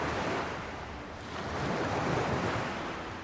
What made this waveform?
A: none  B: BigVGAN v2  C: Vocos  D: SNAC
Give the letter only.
A